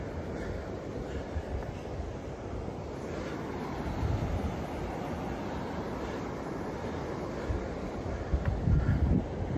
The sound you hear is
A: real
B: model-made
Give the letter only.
A